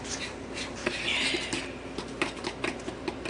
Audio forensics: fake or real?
real